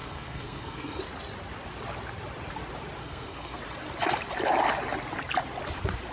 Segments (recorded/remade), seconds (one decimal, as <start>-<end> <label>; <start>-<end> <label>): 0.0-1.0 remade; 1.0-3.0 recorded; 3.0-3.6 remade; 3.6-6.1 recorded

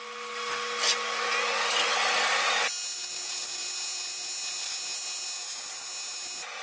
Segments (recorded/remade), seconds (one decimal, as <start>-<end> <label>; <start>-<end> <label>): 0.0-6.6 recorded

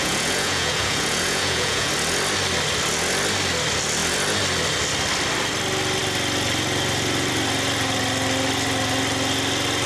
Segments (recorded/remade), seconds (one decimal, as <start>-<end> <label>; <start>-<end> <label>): 0.0-1.9 remade; 1.9-9.9 recorded

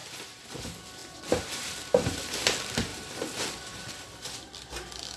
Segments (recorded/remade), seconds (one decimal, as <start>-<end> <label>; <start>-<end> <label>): 0.0-2.9 recorded; 2.9-5.2 remade